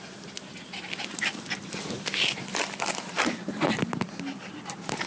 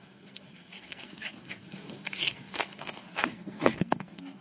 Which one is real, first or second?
first